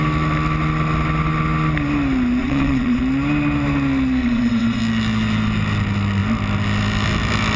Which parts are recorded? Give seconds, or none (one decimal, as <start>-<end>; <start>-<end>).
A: 0.0-2.4; 3.0-4.2; 4.8-7.6